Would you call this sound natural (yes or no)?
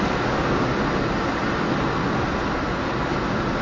yes